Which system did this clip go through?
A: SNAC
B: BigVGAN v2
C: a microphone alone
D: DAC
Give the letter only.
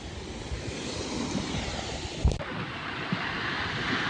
C